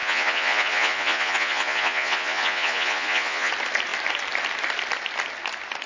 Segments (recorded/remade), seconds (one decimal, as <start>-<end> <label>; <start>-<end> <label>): 0.0-3.5 remade; 3.5-5.9 recorded